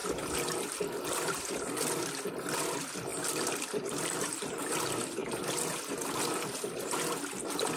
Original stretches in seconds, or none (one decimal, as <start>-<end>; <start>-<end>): 0.0-3.1; 4.8-7.8